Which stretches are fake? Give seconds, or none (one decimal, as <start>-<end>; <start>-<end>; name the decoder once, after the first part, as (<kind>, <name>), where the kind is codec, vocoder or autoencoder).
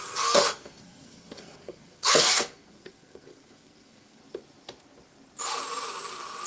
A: 0.0-4.2 (codec, SNAC)